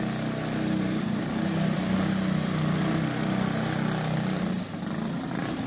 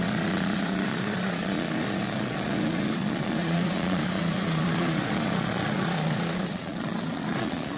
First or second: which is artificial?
second